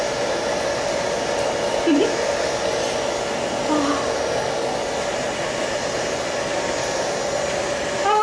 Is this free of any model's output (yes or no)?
yes